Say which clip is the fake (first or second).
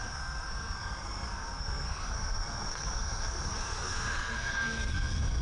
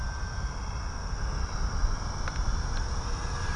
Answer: first